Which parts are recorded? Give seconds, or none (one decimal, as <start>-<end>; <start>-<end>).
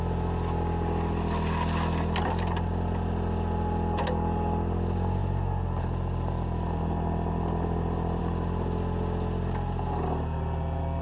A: 0.0-11.0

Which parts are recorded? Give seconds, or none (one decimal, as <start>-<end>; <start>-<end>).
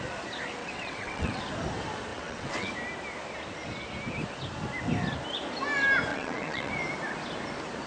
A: 0.0-0.6; 1.4-2.1; 2.7-6.1; 6.7-7.9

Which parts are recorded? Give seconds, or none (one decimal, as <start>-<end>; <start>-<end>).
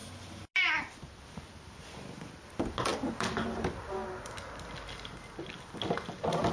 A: 0.5-6.5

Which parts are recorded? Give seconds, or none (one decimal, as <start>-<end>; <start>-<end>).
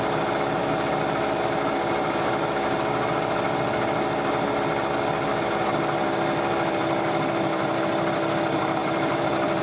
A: 0.0-8.8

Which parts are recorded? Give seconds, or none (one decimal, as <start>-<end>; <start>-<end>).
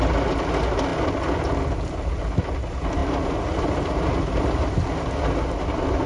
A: 0.0-6.1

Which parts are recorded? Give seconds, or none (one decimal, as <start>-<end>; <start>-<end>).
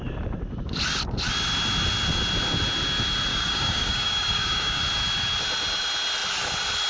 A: 0.0-3.3; 4.8-6.9